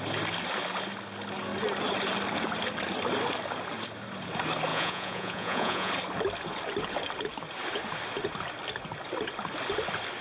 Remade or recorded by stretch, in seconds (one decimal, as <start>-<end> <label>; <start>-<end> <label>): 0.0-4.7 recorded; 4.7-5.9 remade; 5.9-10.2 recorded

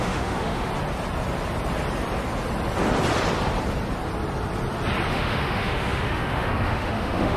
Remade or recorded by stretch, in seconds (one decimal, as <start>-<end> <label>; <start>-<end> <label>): 0.0-0.7 remade; 0.7-5.1 recorded; 5.1-7.4 remade

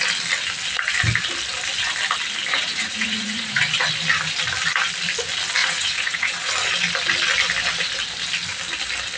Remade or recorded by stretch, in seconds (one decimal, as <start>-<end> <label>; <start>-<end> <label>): 0.0-2.5 recorded; 2.5-3.6 remade; 3.6-5.6 recorded; 5.6-6.5 remade; 6.5-9.2 recorded

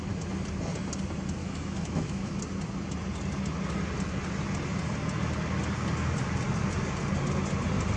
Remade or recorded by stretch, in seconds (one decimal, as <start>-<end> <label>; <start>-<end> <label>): 0.0-1.4 recorded; 1.4-2.4 remade; 2.4-8.0 recorded

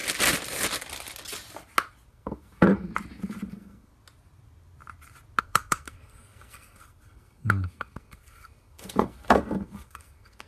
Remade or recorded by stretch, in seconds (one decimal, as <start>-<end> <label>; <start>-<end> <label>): 0.0-2.1 recorded; 2.1-2.9 remade; 2.9-3.5 recorded; 3.5-3.9 remade; 3.9-5.4 recorded; 5.4-10.5 remade

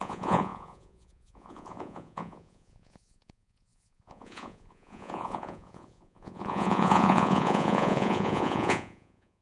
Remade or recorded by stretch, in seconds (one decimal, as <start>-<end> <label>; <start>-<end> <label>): 0.0-9.4 remade

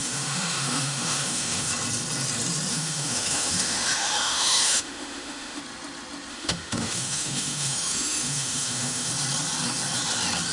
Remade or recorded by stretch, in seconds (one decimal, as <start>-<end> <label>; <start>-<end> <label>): 0.0-1.7 remade; 1.7-2.7 recorded; 2.7-5.6 remade; 5.6-6.3 recorded; 6.3-9.1 remade; 9.1-10.5 recorded

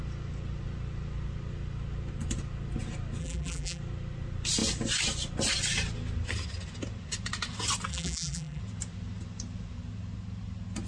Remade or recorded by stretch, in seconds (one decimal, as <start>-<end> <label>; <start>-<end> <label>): 0.0-3.2 recorded; 3.2-3.8 remade; 3.8-7.9 recorded; 7.9-8.6 remade; 8.6-10.9 recorded